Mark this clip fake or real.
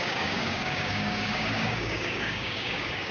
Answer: fake